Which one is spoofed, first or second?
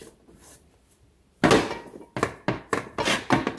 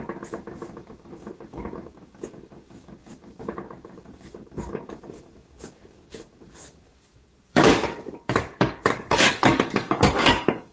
second